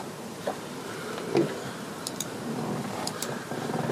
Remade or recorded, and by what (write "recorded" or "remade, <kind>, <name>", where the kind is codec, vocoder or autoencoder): remade, vocoder, BigVGAN v2